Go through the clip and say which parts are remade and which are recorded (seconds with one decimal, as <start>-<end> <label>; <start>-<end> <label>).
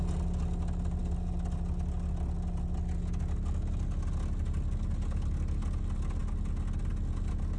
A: 0.0-7.6 recorded